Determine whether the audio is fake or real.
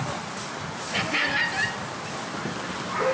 real